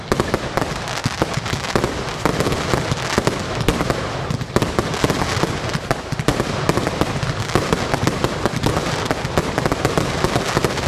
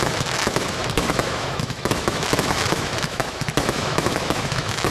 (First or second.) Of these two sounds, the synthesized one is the second